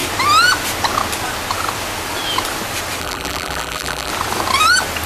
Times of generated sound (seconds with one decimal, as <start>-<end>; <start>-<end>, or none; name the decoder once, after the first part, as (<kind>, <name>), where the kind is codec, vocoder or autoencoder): 3.0-4.1 (vocoder, BigVGAN v2)